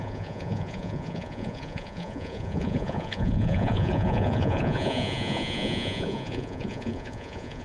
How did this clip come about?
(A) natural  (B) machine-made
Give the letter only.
B